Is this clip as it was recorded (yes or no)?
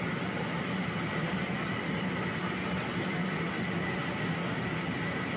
yes